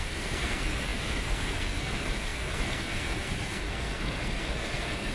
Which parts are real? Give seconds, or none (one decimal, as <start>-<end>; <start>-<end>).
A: none